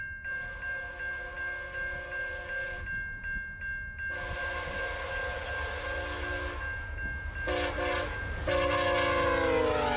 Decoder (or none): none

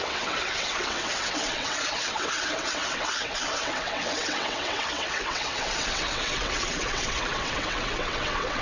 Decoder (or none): vocoder, WaveNeXt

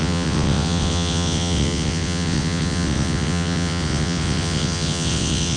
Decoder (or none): vocoder, WaveNeXt